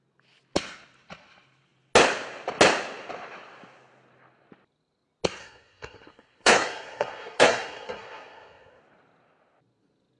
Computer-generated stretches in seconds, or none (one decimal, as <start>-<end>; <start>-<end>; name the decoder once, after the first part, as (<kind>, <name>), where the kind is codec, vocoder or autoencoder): 5.4-8.8 (codec, SNAC)